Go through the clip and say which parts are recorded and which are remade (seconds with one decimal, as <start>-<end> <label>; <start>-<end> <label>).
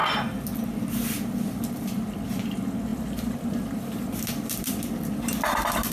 0.0-2.9 recorded; 2.9-4.8 remade; 4.8-5.9 recorded